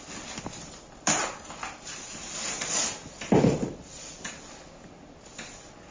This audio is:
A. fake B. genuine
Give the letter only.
B